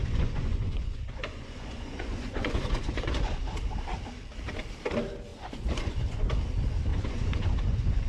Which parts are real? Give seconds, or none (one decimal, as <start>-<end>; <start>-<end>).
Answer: 3.4-5.3; 6.3-6.9